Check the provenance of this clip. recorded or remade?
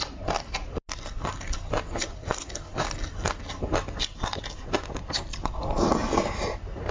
recorded